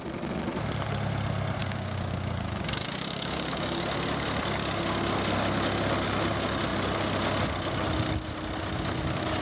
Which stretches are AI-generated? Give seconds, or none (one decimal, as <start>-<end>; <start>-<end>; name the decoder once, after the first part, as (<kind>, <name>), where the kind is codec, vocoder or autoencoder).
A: 1.6-3.8 (codec, DAC)